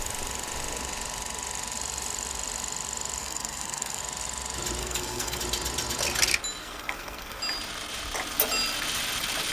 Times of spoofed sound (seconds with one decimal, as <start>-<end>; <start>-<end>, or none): 3.2-4.0; 4.8-5.4; 6.6-7.4